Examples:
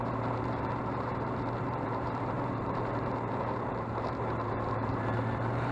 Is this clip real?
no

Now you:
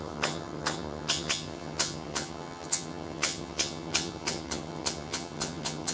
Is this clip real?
no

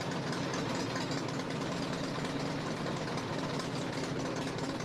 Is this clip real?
yes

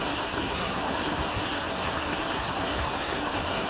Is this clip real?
no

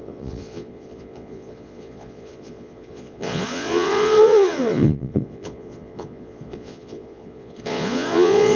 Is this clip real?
no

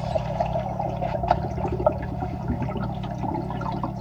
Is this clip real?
no